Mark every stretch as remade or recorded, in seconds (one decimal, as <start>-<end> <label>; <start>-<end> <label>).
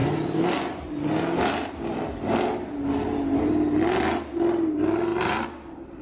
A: 0.0-6.0 recorded